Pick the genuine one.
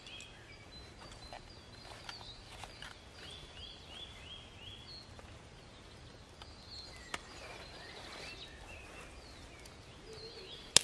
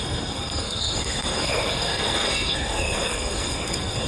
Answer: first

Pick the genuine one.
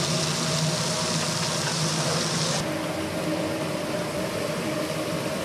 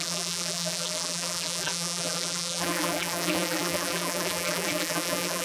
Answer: first